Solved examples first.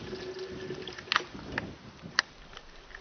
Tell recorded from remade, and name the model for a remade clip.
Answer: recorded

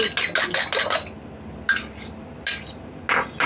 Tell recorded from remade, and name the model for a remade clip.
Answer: recorded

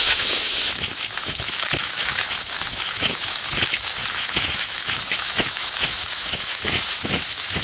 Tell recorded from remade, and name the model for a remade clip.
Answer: remade, autoencoder, DAC-VAE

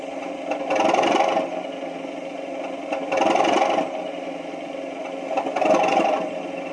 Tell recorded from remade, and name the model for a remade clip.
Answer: recorded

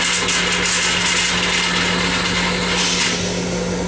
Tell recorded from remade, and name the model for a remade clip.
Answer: recorded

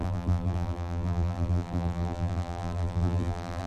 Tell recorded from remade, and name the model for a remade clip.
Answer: remade, vocoder, BigVGAN v2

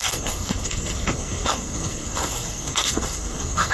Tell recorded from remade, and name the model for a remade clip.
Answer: remade, codec, SNAC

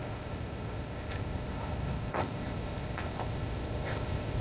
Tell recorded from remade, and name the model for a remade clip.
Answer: remade, codec, ZipCodec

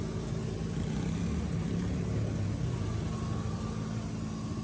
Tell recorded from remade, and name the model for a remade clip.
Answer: recorded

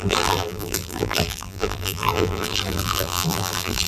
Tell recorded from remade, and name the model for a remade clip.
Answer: remade, vocoder, BigVGAN v2